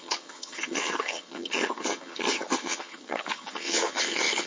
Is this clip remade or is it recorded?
remade